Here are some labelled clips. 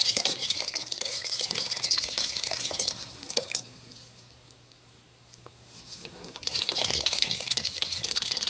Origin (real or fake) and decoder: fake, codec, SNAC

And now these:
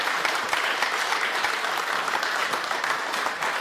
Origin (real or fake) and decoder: fake, vocoder, BigVGAN v2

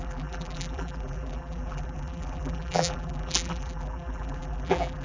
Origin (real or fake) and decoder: fake, vocoder, BigVGAN v2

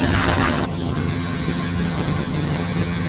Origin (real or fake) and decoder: fake, vocoder, HiFi-GAN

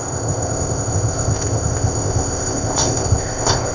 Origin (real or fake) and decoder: fake, codec, ZipCodec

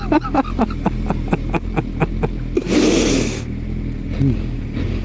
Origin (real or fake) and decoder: real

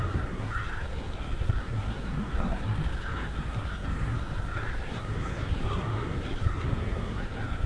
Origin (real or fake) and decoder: fake, codec, SNAC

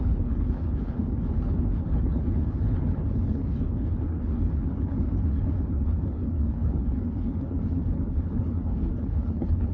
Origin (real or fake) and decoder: fake, codec, HILCodec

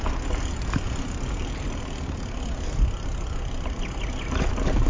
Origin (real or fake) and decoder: real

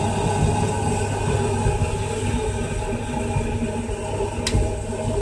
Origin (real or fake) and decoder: real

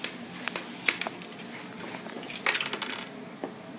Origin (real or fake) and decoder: real